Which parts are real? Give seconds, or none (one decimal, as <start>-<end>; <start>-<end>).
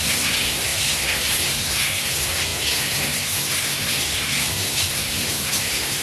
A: none